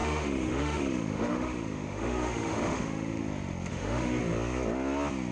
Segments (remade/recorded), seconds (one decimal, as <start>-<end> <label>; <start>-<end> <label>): 0.0-3.2 remade; 3.2-3.7 recorded; 3.7-4.2 remade; 4.2-5.3 recorded

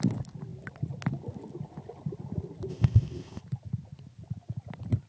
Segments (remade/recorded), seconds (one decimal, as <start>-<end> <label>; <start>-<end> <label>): 0.0-2.7 recorded; 2.7-3.4 remade; 3.4-5.1 recorded